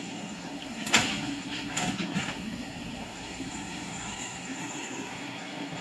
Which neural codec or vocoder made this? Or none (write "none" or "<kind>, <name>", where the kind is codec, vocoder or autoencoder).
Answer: codec, SNAC